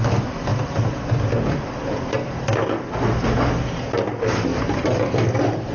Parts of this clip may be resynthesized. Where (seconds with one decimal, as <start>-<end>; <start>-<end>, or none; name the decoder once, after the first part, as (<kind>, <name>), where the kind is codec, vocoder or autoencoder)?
none